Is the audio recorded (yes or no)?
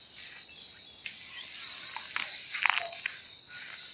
yes